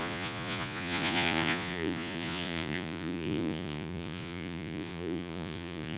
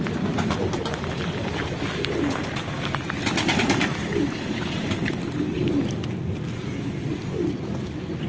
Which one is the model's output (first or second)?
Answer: first